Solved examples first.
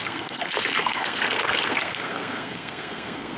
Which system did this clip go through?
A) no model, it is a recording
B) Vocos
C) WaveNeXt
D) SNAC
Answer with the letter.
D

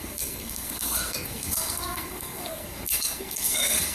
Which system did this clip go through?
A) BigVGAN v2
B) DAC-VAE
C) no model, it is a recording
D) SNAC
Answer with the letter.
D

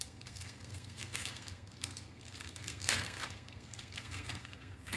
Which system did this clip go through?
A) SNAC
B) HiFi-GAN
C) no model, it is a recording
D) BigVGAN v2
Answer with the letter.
A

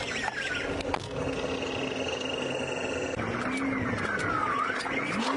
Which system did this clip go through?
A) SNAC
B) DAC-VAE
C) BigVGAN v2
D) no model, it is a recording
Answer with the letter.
D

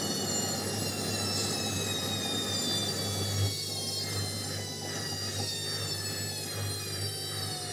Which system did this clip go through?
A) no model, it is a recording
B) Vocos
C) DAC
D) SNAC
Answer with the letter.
A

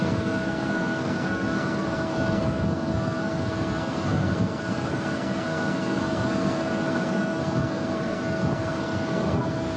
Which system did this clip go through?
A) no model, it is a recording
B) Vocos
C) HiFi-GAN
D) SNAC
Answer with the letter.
D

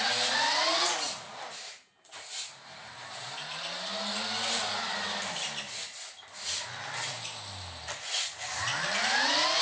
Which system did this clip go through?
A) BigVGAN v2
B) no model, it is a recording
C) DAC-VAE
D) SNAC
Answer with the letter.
B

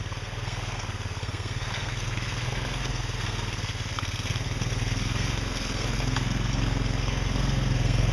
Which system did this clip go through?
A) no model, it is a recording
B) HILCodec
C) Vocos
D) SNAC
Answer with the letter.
D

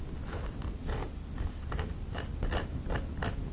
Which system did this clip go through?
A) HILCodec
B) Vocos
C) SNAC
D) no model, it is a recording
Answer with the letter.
D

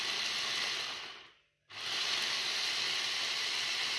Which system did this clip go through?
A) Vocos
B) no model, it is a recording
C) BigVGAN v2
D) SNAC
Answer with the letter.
B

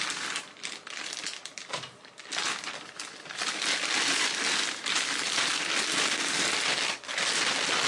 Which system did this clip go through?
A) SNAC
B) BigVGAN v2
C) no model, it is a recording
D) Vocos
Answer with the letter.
C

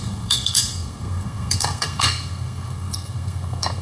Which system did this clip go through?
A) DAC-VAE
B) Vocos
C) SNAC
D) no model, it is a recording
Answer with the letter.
C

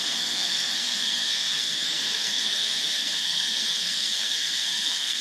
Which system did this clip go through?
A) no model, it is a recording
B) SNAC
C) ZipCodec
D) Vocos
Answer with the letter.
B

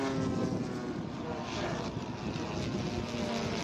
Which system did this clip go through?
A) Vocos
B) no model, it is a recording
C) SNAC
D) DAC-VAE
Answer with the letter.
B